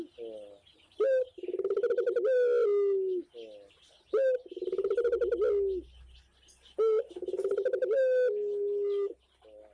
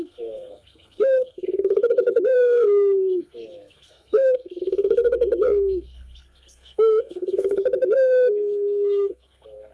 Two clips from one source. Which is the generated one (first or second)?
second